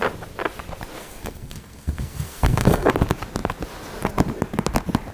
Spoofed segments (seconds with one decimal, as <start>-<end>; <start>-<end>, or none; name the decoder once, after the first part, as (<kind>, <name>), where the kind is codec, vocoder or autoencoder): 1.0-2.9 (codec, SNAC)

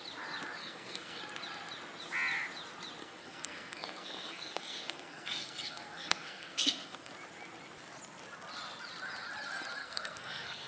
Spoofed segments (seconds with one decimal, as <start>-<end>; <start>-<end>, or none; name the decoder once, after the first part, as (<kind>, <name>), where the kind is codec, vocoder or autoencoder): 0.6-1.2 (codec, SNAC); 3.0-7.1; 9.8-10.7

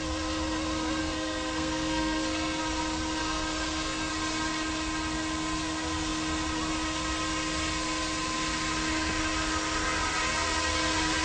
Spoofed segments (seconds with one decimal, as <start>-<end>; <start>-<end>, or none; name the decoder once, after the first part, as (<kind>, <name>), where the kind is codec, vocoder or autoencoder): 1.0-2.6 (codec, SNAC); 3.2-4.1

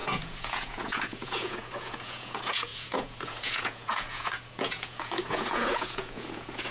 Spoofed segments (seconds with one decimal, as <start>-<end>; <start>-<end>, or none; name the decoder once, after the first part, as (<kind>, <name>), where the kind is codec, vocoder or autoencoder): 0.0-6.7 (vocoder, Vocos)

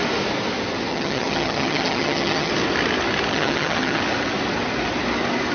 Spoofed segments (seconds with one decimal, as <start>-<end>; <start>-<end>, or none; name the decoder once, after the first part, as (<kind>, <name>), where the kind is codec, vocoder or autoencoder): 0.9-2.5 (vocoder, HiFi-GAN); 3.3-4.0

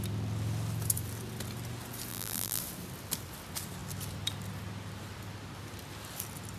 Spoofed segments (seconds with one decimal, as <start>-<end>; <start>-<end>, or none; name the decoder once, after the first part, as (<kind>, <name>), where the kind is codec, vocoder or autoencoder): 2.1-2.6 (vocoder, BigVGAN v2)